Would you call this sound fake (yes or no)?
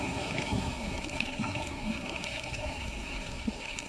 yes